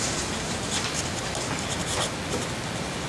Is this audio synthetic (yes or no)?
no